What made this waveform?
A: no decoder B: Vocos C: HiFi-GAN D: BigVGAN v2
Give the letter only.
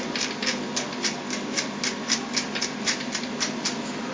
A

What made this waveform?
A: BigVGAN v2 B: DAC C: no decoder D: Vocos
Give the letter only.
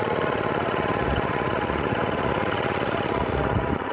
D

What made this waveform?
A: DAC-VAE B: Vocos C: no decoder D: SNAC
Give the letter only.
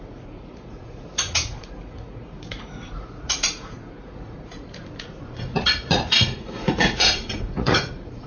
B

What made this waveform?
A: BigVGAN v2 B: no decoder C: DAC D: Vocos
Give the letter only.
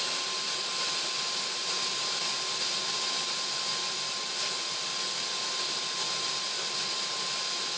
B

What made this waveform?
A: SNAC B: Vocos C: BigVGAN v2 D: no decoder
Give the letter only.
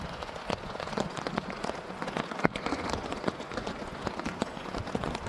B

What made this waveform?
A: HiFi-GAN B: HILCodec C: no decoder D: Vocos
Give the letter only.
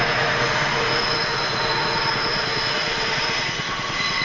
D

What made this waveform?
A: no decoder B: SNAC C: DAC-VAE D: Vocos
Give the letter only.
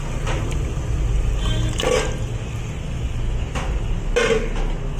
A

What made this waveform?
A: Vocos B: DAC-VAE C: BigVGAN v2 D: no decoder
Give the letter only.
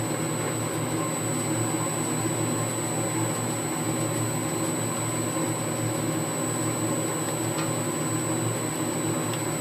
D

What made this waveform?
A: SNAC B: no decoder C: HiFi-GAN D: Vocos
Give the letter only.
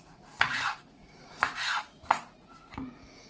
D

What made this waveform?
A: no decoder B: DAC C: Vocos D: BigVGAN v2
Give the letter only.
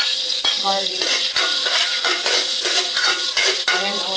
C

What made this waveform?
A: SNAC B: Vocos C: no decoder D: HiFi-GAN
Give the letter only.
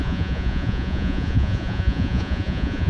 B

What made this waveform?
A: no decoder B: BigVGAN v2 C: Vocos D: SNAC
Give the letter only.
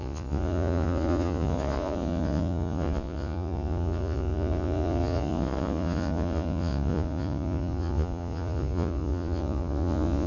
C